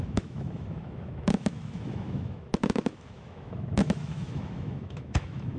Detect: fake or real fake